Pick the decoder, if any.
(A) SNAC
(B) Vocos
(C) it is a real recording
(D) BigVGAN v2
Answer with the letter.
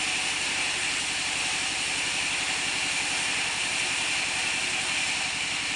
C